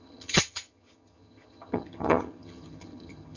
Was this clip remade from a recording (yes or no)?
yes